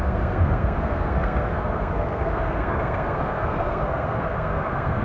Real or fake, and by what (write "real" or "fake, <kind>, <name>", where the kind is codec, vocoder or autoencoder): fake, codec, SNAC